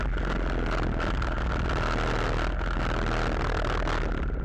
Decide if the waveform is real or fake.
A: real